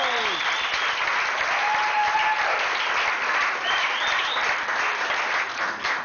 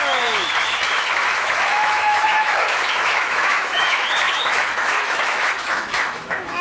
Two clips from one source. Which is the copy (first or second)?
second